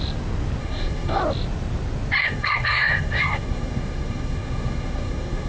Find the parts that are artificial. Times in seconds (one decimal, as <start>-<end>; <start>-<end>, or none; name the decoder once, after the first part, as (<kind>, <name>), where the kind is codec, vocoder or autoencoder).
0.6-1.2 (codec, SNAC); 2.2-5.5